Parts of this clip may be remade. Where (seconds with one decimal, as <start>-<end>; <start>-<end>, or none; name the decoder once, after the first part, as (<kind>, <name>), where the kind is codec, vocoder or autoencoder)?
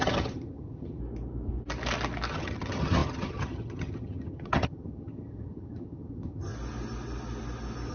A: 0.0-1.0 (vocoder, HiFi-GAN); 2.3-6.5